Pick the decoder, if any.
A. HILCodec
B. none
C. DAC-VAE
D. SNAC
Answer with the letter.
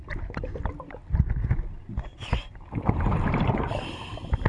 B